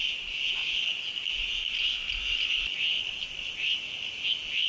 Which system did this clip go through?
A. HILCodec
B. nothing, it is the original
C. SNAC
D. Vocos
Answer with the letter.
B